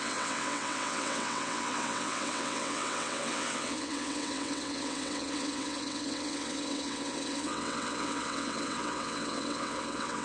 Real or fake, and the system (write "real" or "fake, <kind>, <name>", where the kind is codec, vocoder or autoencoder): fake, vocoder, WaveNeXt